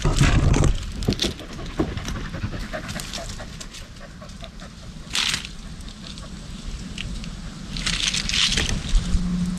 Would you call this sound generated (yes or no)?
no